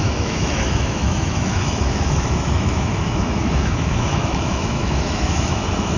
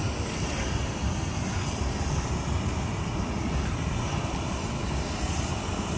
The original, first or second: second